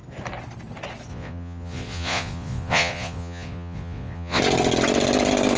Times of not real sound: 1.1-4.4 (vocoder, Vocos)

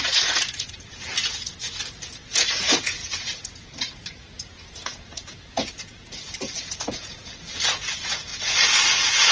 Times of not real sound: 0.0-9.3 (vocoder, Vocos)

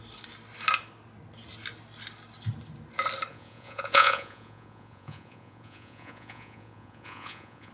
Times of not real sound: 3.3-7.7 (vocoder, Vocos)

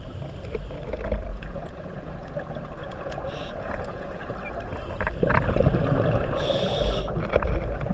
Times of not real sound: 1.3-2.3 (vocoder, Vocos); 2.8-4.2

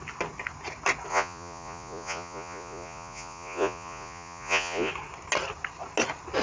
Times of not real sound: 1.1-4.9 (vocoder, Vocos)

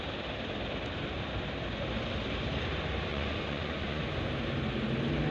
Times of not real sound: 3.1-4.0 (vocoder, Vocos)

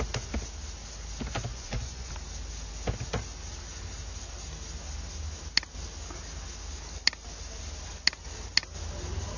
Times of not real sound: 1.5-2.1 (vocoder, Vocos)